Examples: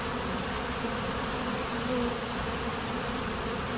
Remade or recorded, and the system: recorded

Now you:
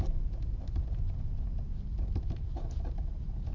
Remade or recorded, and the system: recorded